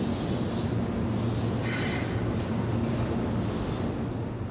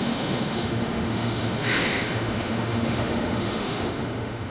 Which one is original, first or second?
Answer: first